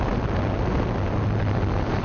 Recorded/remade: recorded